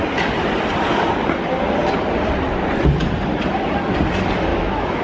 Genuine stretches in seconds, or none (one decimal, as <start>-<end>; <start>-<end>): 0.0-4.5